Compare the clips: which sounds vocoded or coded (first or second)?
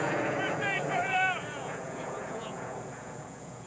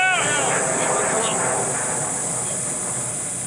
first